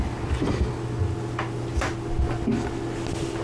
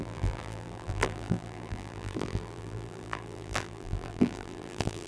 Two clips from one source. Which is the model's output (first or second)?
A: second